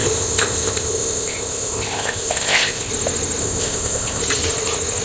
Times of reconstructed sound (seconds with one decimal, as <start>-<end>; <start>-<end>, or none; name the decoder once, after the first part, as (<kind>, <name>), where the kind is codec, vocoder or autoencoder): 0.0-2.9 (codec, ZipCodec); 3.4-4.2